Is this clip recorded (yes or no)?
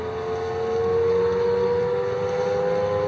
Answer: yes